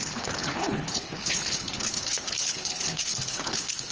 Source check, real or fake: fake